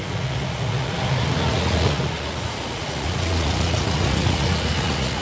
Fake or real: fake